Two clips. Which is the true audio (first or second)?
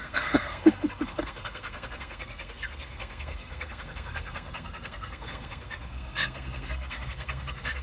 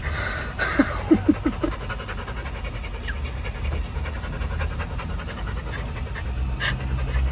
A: second